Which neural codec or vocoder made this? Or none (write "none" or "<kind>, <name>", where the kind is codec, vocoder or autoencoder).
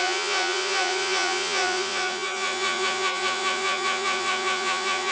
vocoder, Vocos